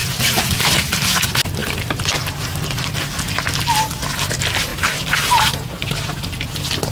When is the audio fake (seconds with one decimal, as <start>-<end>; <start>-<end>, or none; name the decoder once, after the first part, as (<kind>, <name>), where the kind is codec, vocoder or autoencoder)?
1.6-2.7 (vocoder, BigVGAN v2); 4.7-5.9